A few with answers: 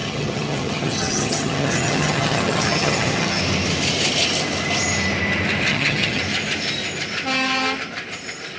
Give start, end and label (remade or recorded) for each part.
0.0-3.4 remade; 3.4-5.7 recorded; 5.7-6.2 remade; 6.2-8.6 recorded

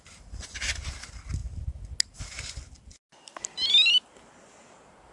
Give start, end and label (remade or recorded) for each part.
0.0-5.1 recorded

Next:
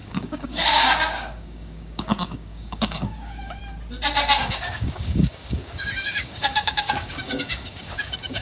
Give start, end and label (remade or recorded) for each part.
0.0-3.6 remade; 3.6-4.4 recorded; 4.4-8.4 remade

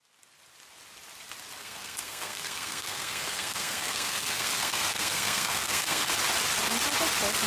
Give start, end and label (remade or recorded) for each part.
0.0-1.6 recorded; 1.6-6.1 remade; 6.1-7.5 recorded

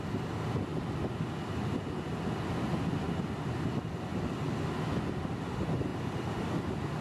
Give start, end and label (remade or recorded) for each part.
0.0-7.0 recorded